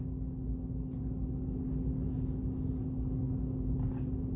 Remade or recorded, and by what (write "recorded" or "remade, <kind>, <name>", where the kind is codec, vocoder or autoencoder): recorded